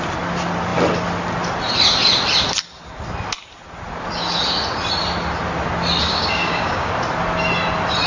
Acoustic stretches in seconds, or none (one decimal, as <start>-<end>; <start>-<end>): 0.0-6.1; 6.9-8.1